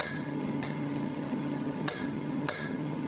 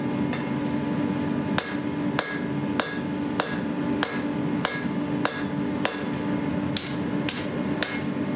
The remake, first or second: first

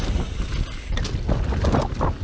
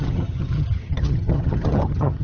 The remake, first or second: second